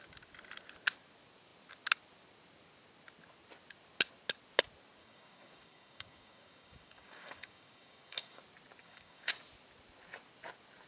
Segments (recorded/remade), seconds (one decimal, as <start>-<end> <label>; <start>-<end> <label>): 0.0-5.0 recorded; 5.0-8.4 remade; 8.4-8.8 recorded; 8.8-9.3 remade; 9.3-10.9 recorded